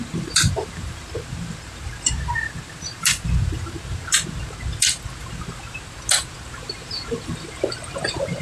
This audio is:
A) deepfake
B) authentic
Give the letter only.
A